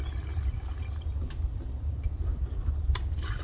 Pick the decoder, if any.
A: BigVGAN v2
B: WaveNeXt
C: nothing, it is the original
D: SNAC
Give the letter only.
C